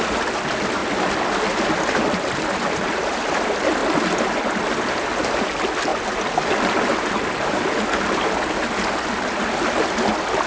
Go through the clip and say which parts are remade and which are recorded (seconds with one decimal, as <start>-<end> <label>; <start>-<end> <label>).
0.0-10.5 recorded